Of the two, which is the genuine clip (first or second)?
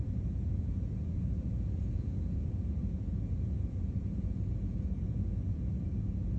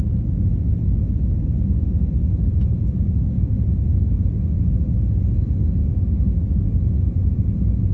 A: second